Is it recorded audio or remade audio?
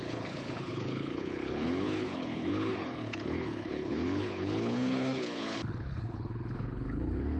remade